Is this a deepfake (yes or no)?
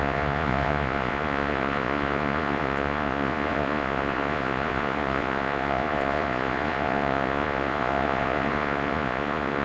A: yes